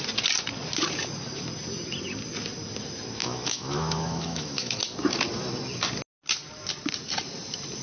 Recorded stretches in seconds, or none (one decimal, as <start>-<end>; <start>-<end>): 0.0-3.2; 4.8-7.8